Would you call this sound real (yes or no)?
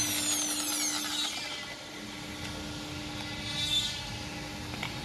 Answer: yes